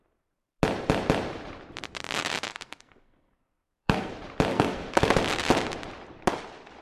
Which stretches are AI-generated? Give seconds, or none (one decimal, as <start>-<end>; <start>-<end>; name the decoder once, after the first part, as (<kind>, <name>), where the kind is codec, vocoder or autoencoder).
2.5-4.1 (codec, SNAC); 4.5-5.2